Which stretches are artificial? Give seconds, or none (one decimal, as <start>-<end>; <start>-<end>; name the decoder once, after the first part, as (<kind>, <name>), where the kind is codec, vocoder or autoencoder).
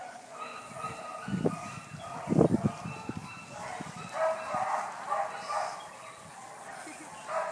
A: 0.0-0.6 (vocoder, Vocos)